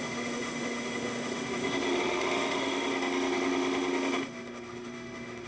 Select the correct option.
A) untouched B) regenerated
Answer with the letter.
B